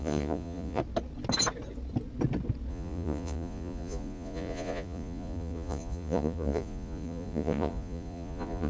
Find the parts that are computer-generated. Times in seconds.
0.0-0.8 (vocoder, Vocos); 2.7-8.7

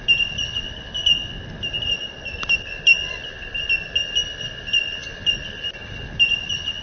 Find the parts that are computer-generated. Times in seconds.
none

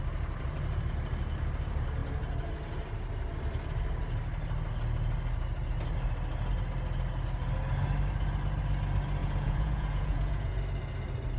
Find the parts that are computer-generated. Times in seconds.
9.2-10.6 (vocoder, Vocos)

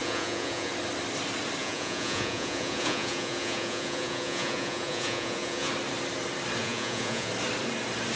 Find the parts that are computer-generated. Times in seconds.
0.0-0.7 (vocoder, Vocos); 1.6-5.7; 6.6-7.3

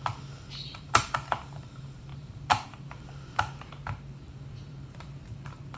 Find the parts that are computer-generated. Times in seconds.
0.8-5.8 (vocoder, BigVGAN v2)